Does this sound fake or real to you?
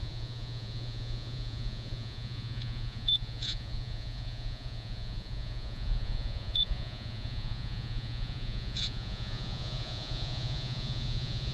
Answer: fake